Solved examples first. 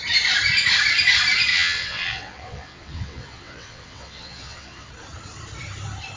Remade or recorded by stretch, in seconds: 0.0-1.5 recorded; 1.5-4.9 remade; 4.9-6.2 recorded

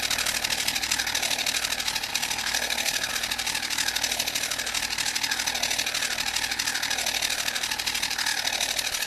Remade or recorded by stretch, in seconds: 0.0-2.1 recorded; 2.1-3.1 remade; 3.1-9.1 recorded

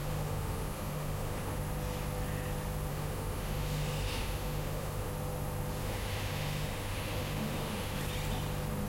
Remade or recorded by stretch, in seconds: 0.0-1.6 remade; 1.6-2.9 recorded; 2.9-5.1 remade; 5.1-5.8 recorded; 5.8-8.0 remade; 8.0-8.9 recorded